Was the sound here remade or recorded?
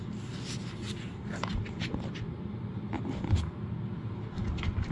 recorded